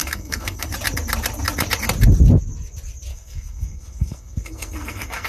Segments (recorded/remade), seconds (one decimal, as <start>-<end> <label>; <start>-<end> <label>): 0.0-0.7 remade; 0.7-3.1 recorded; 3.1-5.3 remade